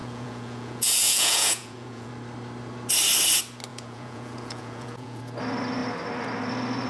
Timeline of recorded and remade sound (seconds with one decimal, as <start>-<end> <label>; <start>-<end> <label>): 0.0-2.1 remade; 2.1-3.7 recorded; 3.7-5.2 remade; 5.2-6.9 recorded